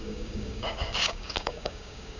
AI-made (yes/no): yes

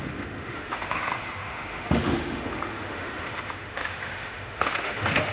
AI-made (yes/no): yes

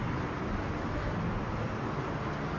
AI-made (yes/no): no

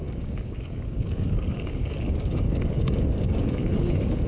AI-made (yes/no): yes